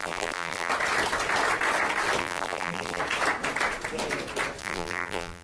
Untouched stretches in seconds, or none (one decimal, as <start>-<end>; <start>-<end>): 0.7-2.2; 3.0-4.6